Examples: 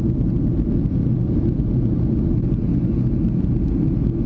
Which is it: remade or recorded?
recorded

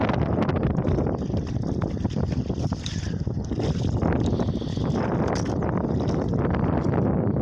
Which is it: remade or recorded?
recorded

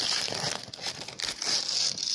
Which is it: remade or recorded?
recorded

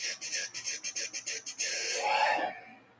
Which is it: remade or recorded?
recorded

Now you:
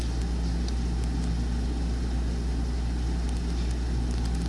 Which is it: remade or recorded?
recorded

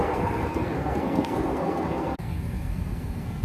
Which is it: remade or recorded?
remade